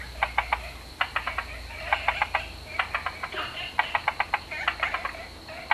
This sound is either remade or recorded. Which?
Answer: recorded